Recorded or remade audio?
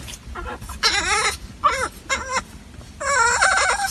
recorded